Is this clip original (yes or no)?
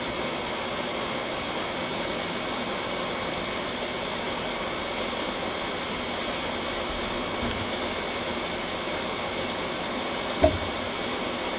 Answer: yes